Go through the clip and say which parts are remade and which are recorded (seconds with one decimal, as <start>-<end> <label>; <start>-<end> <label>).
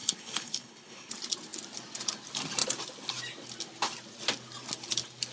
0.0-1.1 remade; 1.1-5.3 recorded